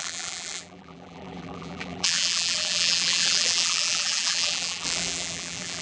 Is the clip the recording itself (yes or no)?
no